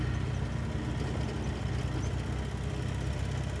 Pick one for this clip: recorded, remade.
recorded